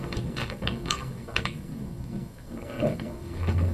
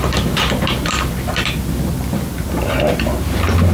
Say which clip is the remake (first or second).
first